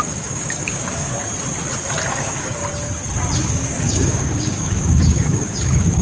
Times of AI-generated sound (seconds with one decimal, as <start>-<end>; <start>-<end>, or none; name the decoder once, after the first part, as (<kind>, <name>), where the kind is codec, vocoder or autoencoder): 0.0-1.1 (codec, DAC); 2.1-2.6; 3.4-6.0